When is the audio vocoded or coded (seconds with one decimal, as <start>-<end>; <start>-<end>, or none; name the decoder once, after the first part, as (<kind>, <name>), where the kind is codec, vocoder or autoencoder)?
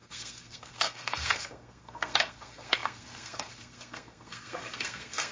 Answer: 0.0-5.3 (codec, SNAC)